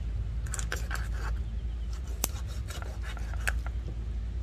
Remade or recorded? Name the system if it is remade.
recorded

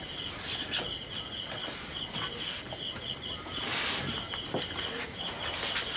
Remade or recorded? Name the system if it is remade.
recorded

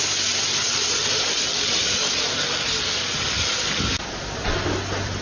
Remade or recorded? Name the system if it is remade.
recorded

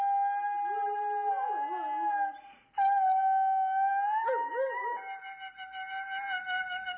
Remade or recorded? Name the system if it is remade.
recorded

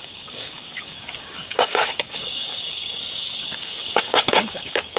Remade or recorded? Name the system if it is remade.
remade, codec, DAC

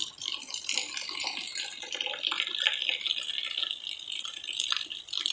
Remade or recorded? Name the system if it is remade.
recorded